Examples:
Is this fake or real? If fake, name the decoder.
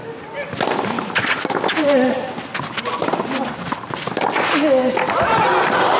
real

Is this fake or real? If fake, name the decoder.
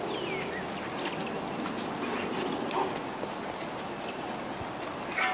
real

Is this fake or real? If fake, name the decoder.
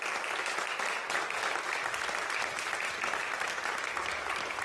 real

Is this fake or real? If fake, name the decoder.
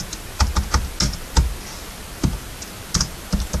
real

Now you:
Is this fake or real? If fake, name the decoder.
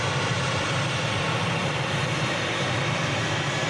real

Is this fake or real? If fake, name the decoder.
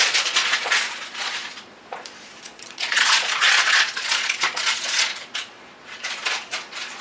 fake, vocoder, Vocos